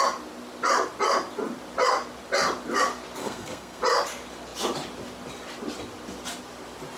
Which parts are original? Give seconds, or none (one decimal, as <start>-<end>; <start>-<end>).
0.0-3.2; 3.8-7.0